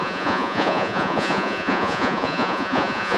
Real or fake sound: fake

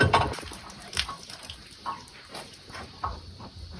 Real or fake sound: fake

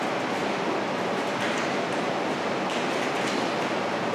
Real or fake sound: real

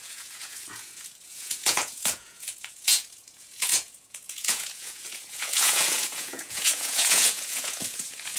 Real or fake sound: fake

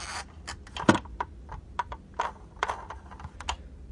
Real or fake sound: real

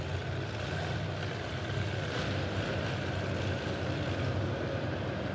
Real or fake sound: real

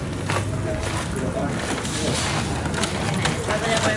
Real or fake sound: real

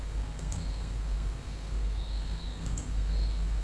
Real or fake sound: fake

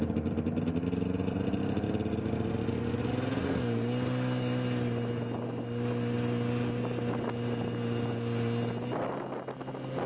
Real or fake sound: real